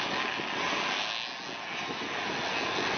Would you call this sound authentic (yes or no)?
yes